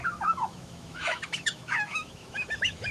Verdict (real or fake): fake